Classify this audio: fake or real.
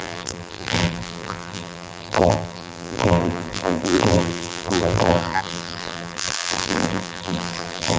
fake